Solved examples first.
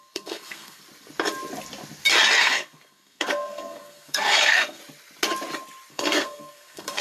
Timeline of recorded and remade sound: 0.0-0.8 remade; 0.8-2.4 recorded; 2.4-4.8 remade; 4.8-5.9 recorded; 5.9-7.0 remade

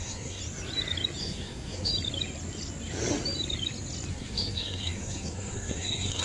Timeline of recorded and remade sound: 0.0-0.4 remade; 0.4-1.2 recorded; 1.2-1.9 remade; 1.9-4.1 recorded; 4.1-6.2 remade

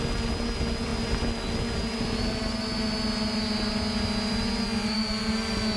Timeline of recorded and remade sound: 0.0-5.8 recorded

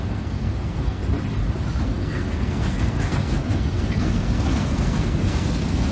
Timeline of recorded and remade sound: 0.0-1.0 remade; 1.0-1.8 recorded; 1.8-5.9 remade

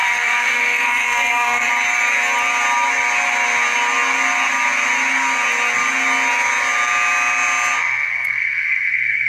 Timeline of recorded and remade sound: 0.0-1.7 remade; 1.7-7.8 recorded; 7.8-9.3 remade

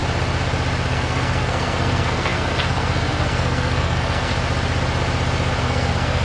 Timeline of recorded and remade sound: 0.0-0.9 recorded; 0.9-4.3 remade; 4.3-5.6 recorded; 5.6-6.2 remade

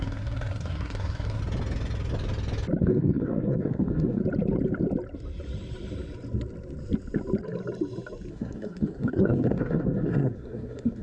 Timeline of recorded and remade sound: 0.0-1.4 remade; 1.4-2.8 recorded; 2.8-4.2 remade; 4.2-8.3 recorded; 8.3-11.0 remade